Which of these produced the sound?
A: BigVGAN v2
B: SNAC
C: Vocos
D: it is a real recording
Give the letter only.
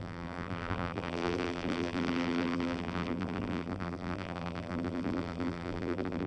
A